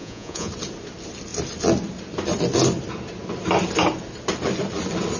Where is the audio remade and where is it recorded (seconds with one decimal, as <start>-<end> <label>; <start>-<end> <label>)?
0.0-0.5 remade; 0.5-5.2 recorded